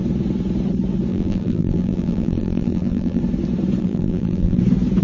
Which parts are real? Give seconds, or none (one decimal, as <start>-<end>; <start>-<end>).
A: 0.0-1.1; 3.2-3.8; 4.6-5.0